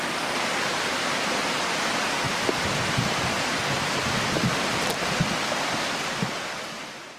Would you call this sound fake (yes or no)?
no